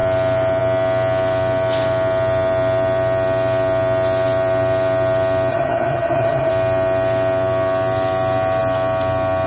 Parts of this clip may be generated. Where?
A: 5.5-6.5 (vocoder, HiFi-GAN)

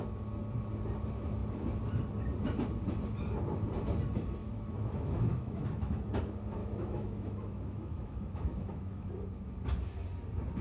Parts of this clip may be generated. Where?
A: 4.4-6.0 (autoencoder, DAC-VAE); 6.6-9.1

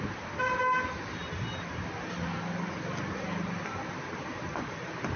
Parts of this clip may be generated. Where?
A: none

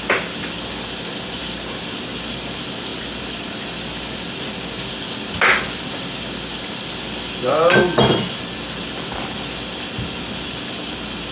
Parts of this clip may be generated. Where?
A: none

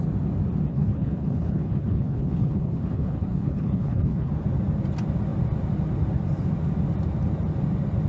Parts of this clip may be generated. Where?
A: 0.7-4.3 (codec, HILCodec)